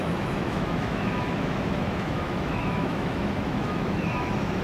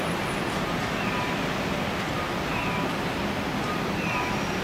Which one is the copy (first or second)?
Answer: first